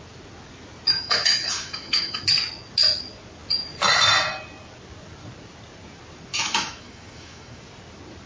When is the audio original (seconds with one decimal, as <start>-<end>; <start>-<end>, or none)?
0.0-0.9; 2.2-6.3; 7.6-8.3